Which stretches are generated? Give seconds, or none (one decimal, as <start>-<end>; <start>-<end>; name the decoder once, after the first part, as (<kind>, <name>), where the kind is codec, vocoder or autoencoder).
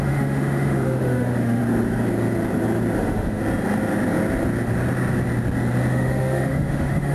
0.0-1.6 (autoencoder, DAC-VAE); 3.0-3.4; 5.9-7.1